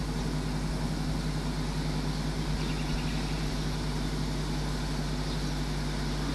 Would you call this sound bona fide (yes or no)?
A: yes